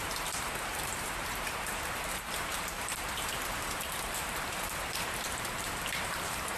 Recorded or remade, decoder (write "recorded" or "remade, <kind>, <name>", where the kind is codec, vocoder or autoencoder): remade, vocoder, BigVGAN v2